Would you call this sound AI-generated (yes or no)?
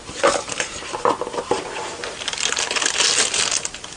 no